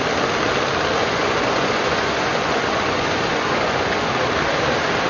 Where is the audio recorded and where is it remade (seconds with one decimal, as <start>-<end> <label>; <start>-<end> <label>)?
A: 0.0-1.0 recorded; 1.0-4.1 remade; 4.1-5.1 recorded